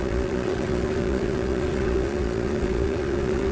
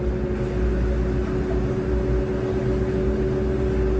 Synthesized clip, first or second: first